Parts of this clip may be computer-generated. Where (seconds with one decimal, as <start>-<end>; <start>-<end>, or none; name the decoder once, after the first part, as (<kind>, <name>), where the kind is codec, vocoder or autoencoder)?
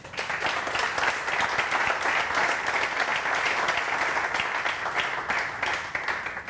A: none